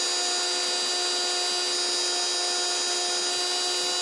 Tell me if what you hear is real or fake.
real